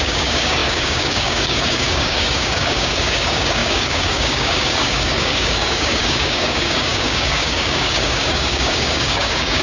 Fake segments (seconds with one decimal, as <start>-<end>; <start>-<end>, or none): 0.0-9.6